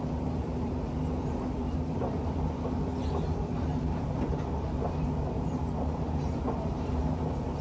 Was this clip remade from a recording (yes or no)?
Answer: yes